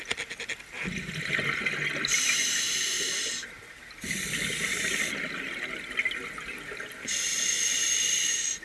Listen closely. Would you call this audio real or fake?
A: real